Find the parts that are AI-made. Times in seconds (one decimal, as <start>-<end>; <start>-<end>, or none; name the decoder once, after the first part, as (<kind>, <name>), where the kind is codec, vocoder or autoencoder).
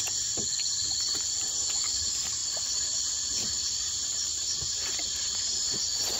none